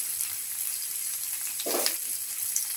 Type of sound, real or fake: real